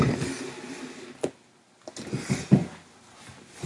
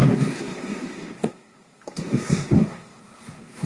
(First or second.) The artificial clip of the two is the second